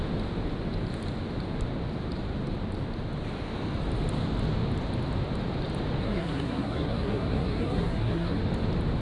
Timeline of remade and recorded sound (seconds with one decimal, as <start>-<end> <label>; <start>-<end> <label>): 0.0-6.0 recorded; 6.0-8.4 remade; 8.4-9.0 recorded